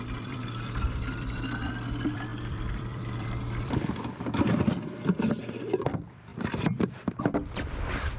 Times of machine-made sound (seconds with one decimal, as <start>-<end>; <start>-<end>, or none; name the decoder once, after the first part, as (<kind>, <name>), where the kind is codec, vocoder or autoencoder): 0.0-8.2 (vocoder, BigVGAN v2)